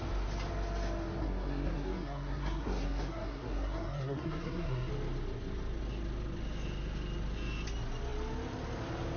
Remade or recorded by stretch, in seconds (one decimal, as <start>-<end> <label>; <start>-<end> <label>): 0.0-1.2 recorded; 1.2-4.9 remade; 4.9-9.2 recorded